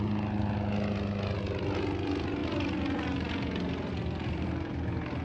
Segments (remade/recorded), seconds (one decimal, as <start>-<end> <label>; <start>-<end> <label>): 0.0-5.2 recorded